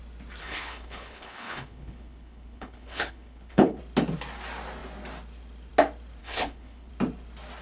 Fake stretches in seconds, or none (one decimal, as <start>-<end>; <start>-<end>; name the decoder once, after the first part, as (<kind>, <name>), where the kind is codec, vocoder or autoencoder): 0.4-3.8 (codec, HILCodec); 6.2-6.9